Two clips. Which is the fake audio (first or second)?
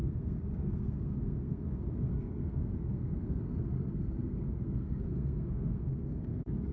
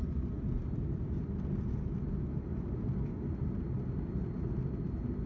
first